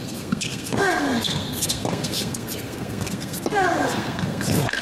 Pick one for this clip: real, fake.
fake